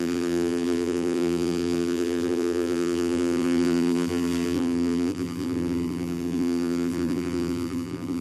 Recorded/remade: remade